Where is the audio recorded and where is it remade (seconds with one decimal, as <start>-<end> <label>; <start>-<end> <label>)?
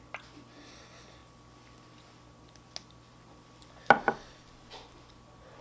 0.0-5.6 recorded